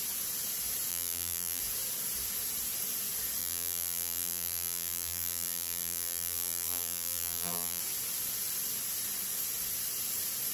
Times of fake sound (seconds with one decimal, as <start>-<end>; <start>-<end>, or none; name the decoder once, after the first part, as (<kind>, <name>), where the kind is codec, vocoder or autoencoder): 0.9-1.6 (vocoder, BigVGAN v2); 3.4-7.8